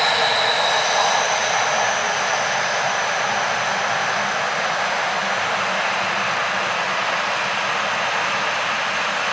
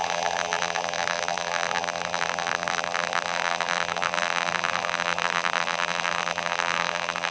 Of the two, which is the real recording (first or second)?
first